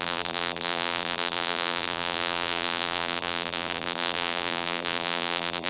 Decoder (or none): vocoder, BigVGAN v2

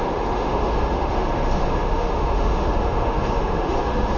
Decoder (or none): autoencoder, DAC-VAE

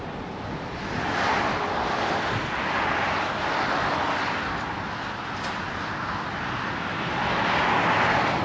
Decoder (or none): none